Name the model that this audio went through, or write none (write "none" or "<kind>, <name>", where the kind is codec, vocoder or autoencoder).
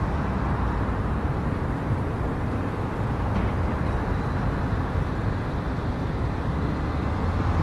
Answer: vocoder, BigVGAN v2